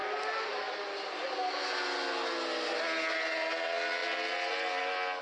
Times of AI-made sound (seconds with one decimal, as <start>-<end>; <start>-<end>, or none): none